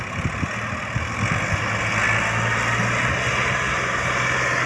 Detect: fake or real real